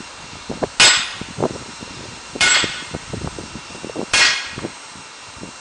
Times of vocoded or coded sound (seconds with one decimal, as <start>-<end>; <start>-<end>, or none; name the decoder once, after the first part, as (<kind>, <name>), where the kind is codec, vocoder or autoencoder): 1.4-4.2 (vocoder, BigVGAN v2)